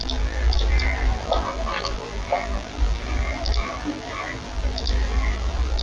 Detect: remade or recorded remade